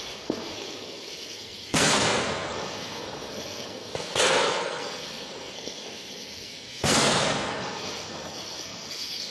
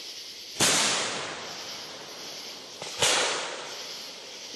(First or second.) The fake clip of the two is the first